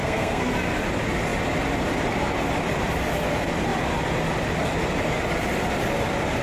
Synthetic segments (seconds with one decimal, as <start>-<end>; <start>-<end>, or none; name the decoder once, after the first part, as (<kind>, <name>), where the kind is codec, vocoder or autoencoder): 0.0-0.5 (codec, SNAC)

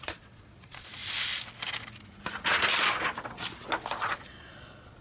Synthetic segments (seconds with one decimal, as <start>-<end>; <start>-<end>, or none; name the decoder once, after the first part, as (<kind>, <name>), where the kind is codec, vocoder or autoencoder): 0.0-1.0 (vocoder, Vocos); 4.0-5.0